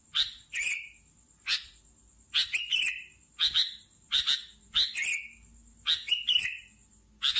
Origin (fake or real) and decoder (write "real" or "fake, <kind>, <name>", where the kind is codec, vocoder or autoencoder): real